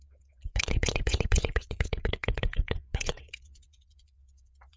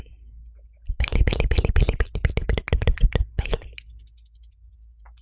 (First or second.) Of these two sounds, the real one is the second